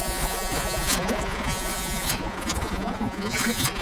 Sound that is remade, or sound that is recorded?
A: remade